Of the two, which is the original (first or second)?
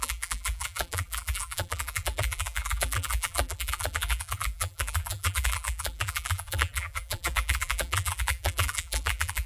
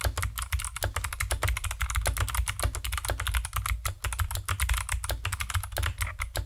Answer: second